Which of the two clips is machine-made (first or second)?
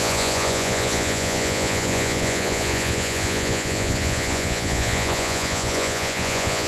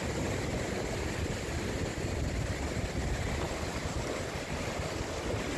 first